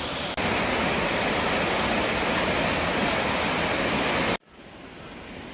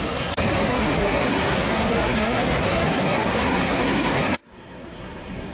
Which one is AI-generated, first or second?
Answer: second